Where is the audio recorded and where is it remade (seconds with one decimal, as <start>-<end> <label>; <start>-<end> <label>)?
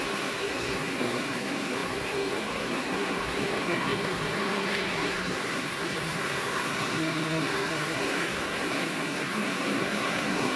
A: 0.0-10.6 remade